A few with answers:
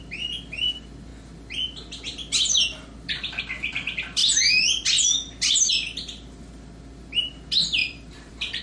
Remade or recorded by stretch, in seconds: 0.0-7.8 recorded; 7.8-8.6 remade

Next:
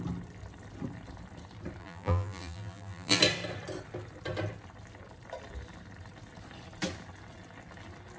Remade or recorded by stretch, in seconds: 0.0-1.8 recorded; 1.8-3.2 remade; 3.2-8.2 recorded

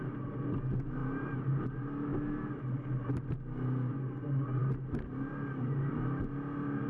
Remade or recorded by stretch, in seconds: 0.0-6.9 recorded

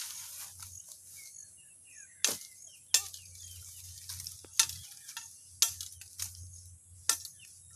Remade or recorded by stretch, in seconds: 0.0-7.8 recorded

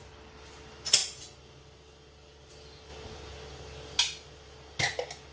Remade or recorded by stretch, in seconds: 0.0-5.3 recorded

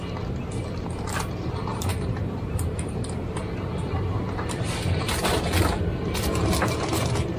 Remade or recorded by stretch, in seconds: 0.0-1.7 recorded; 1.7-5.5 remade; 5.5-7.4 recorded

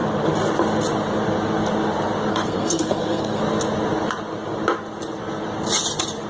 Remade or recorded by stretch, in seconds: 0.0-2.3 recorded; 2.3-3.4 remade; 3.4-6.3 recorded

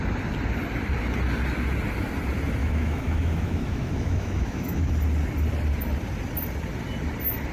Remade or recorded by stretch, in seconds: 0.0-2.6 recorded; 2.6-4.9 remade; 4.9-7.5 recorded